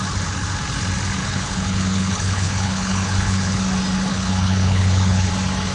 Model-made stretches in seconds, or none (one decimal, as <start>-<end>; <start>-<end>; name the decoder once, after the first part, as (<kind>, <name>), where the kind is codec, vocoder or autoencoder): 1.2-3.6 (codec, HILCodec); 4.1-5.3